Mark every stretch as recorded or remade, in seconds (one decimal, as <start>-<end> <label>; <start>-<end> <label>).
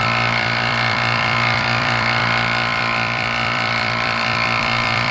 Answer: 0.0-5.1 remade